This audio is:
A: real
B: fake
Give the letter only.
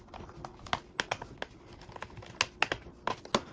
A